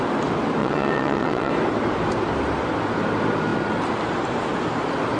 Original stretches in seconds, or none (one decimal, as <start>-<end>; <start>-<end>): 0.0-0.6; 1.5-5.2